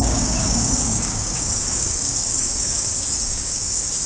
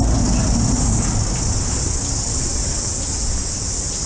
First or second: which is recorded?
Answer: second